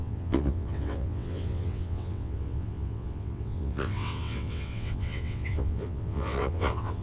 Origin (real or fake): fake